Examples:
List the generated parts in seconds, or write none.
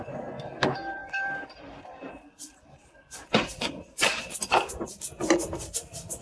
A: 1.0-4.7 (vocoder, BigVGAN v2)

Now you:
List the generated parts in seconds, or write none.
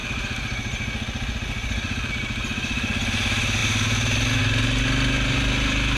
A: none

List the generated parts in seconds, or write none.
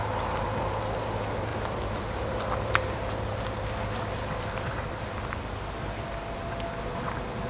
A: 1.5-3.4 (vocoder, BigVGAN v2)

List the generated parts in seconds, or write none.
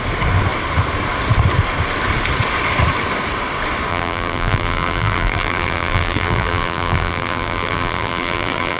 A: 3.9-8.8 (vocoder, BigVGAN v2)